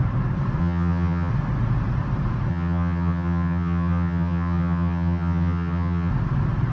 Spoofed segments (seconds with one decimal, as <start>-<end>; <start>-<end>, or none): 0.6-1.3; 2.5-6.1